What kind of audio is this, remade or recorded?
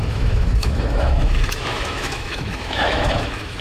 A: remade